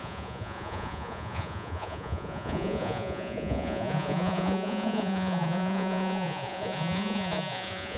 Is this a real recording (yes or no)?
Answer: no